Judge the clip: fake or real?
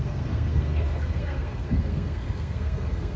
fake